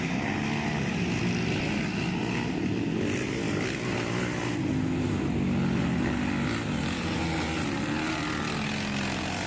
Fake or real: real